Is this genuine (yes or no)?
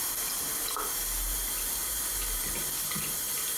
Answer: yes